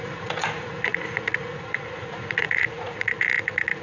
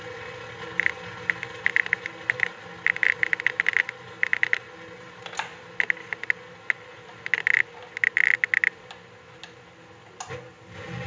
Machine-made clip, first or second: first